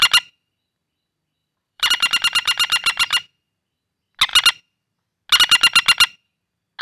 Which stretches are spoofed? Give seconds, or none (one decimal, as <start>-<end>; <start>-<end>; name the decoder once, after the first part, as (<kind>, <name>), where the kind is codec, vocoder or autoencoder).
1.4-3.2 (vocoder, BigVGAN v2)